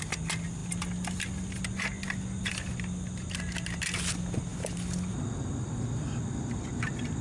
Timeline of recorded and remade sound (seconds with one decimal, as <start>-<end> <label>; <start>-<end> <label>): 0.0-7.2 recorded